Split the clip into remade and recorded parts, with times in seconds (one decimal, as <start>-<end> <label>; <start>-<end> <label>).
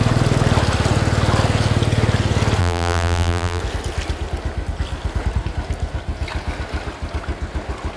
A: 0.0-2.6 recorded; 2.6-3.6 remade; 3.6-8.0 recorded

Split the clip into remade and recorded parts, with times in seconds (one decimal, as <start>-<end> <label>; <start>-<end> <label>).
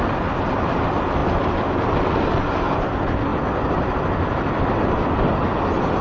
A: 0.0-6.0 recorded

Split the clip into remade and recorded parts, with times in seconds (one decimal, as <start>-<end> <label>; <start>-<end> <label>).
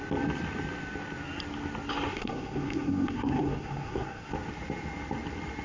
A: 0.0-2.1 recorded; 2.1-4.3 remade; 4.3-5.6 recorded